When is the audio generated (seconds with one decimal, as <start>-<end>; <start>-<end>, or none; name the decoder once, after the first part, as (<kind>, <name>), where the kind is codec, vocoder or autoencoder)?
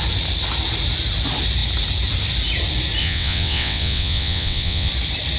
3.0-4.9 (vocoder, WaveNeXt)